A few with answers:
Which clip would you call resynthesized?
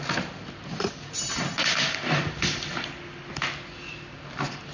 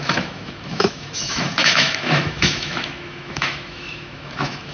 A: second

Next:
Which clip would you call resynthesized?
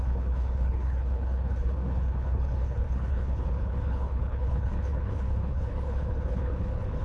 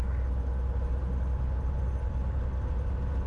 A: first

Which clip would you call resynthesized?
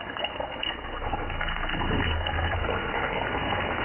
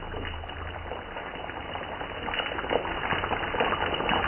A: first